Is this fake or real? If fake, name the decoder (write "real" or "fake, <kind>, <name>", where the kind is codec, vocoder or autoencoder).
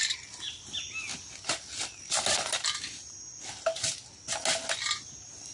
real